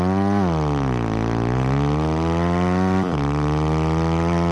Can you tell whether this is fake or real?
real